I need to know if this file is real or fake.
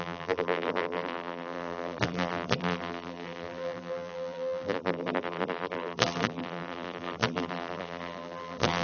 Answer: fake